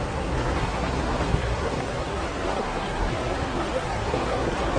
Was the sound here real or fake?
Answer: fake